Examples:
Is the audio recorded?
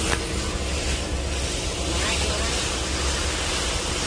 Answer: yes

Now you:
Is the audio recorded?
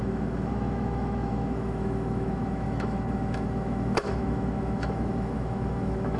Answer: no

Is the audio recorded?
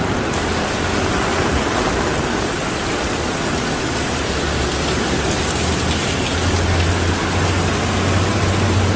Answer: yes